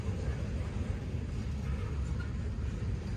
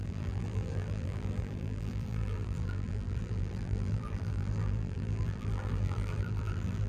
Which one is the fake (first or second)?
second